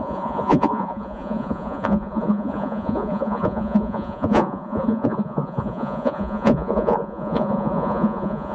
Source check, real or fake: fake